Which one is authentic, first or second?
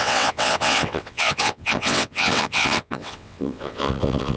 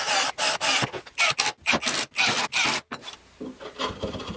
second